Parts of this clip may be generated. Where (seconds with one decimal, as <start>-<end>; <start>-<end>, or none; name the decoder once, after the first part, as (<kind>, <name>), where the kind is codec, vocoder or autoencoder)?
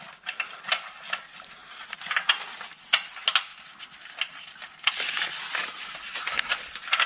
5.6-6.2 (vocoder, BigVGAN v2)